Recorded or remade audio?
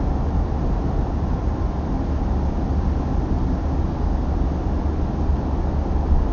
recorded